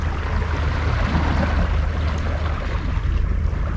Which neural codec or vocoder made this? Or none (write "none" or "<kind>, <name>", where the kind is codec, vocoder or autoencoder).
none